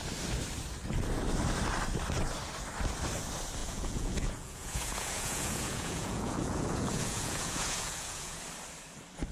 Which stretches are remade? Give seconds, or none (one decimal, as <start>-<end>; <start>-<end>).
3.6-8.4